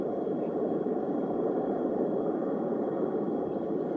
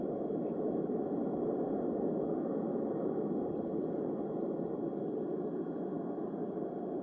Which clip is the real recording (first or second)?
second